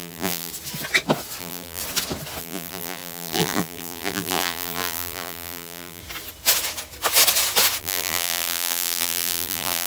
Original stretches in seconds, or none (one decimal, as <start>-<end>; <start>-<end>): 0.5-1.4; 1.8-2.4; 6.0-7.8